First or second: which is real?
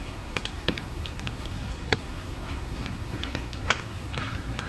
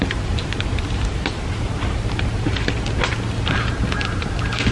second